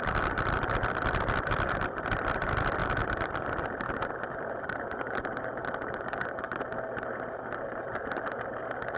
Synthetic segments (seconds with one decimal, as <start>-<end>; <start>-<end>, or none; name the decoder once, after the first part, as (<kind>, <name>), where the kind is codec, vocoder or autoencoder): 0.0-2.8 (vocoder, BigVGAN v2); 7.6-9.0